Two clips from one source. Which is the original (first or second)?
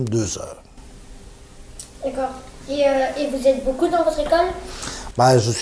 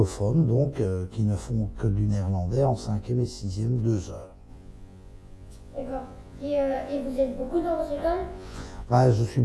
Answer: first